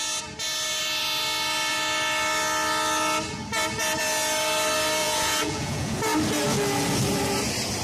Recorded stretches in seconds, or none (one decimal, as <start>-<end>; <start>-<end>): 0.0-5.0; 6.0-7.8